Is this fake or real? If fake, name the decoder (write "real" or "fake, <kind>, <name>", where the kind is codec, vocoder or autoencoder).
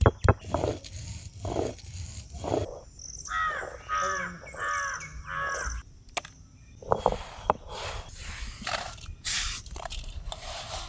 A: real